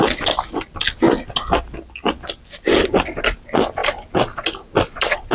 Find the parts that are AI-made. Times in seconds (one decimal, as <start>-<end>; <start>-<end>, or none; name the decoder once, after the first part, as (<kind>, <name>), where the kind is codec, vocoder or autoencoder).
none